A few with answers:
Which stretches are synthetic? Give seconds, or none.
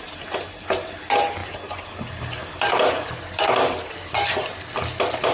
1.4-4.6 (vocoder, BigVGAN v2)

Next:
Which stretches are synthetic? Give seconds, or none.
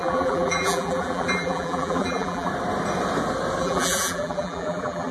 0.0-2.5 (vocoder, BigVGAN v2); 3.6-5.1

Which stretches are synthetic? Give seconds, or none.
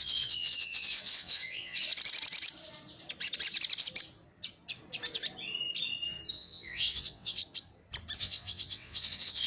0.0-1.9 (vocoder, WaveNeXt); 6.3-7.4; 8.2-9.5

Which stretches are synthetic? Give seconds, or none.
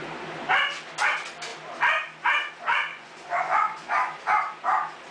2.9-4.2 (vocoder, Vocos)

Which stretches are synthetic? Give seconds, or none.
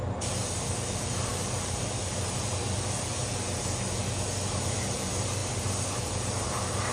0.0-4.0 (vocoder, BigVGAN v2); 4.6-5.4; 6.0-6.9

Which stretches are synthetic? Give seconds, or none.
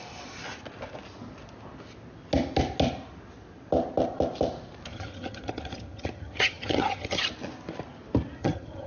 4.9-7.2 (vocoder, HiFi-GAN); 8.4-8.9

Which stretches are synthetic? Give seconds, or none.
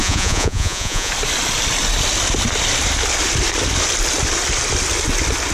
0.0-1.1 (vocoder, Vocos)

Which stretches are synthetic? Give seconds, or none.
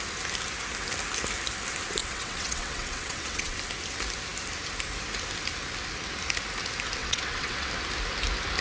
2.0-3.6 (vocoder, WaveNeXt); 7.0-7.7